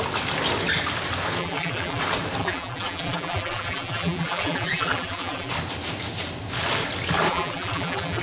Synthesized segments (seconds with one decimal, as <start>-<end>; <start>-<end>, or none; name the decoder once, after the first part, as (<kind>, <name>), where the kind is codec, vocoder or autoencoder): 1.4-2.0 (vocoder, BigVGAN v2); 2.4-5.5; 7.3-8.2